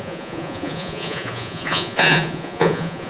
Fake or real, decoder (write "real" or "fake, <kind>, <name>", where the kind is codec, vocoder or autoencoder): fake, vocoder, Vocos